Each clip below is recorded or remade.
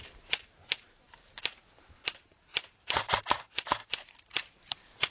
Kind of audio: remade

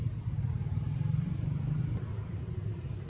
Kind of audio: remade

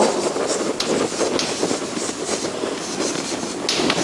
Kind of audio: recorded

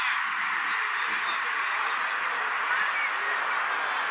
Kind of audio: recorded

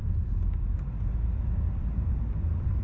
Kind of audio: remade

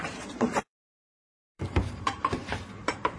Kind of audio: remade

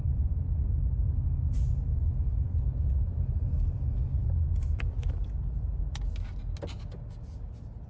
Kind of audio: recorded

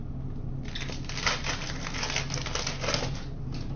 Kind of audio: recorded